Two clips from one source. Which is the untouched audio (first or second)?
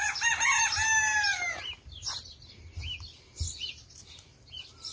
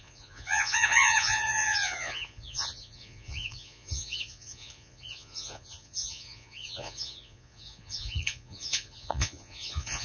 first